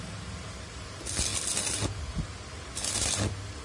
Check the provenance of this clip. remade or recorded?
recorded